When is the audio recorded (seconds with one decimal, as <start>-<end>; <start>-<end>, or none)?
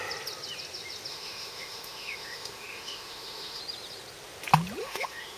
0.0-1.1; 3.6-4.8